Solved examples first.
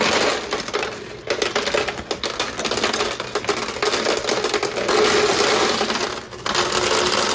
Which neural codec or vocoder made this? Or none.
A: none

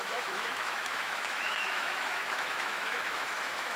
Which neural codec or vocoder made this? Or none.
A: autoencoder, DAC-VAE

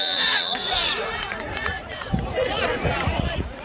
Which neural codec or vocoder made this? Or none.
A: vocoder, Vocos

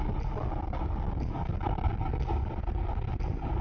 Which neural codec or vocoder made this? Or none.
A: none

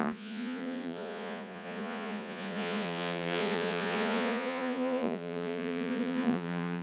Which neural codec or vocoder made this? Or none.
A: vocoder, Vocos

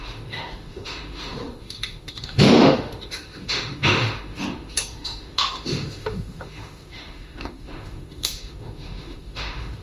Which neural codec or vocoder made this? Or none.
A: autoencoder, DAC-VAE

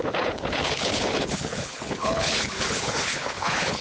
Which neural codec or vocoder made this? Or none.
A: codec, HILCodec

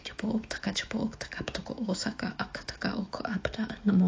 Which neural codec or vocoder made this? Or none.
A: autoencoder, DAC-VAE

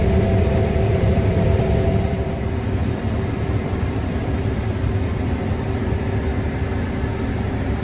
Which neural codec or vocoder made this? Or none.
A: vocoder, BigVGAN v2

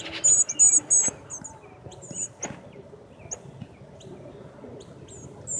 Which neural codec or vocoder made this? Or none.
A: none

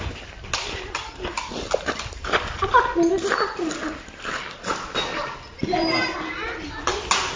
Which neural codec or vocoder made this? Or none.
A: none